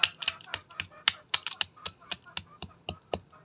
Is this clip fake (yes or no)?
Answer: no